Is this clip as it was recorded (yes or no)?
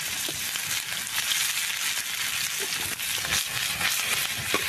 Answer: yes